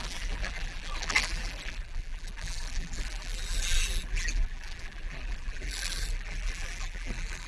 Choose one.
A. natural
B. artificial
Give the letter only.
B